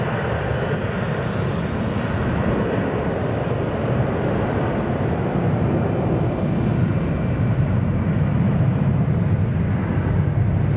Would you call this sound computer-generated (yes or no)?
no